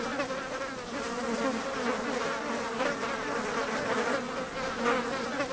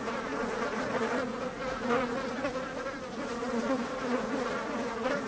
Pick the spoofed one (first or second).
second